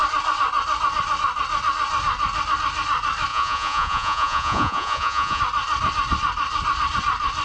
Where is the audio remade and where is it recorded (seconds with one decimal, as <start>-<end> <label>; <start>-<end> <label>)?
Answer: 0.0-3.3 recorded; 3.3-5.4 remade; 5.4-7.4 recorded